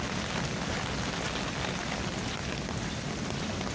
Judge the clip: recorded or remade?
recorded